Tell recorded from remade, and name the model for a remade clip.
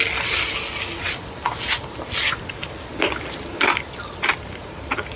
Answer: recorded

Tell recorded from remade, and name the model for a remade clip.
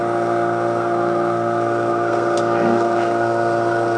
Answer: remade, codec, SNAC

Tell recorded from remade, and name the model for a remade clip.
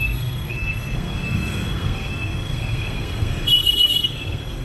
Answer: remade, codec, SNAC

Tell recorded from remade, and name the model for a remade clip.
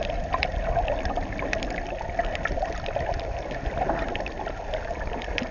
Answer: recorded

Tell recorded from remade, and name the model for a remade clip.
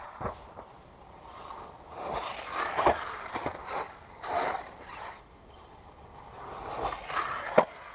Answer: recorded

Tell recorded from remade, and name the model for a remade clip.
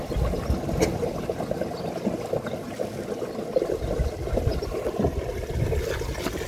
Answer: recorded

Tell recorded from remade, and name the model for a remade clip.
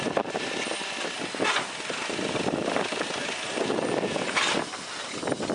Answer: recorded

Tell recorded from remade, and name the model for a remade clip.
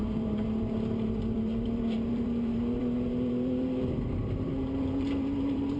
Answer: remade, vocoder, BigVGAN v2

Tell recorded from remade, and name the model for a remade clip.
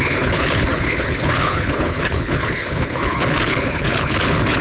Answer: remade, codec, HILCodec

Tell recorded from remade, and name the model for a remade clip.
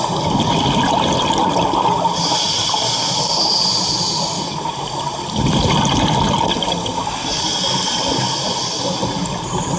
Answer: recorded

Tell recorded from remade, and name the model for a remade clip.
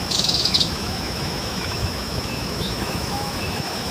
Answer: remade, autoencoder, DAC-VAE